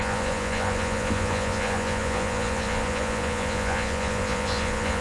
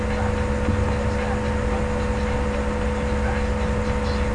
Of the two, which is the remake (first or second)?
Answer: first